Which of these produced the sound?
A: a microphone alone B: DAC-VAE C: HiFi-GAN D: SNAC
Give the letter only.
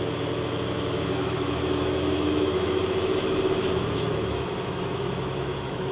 B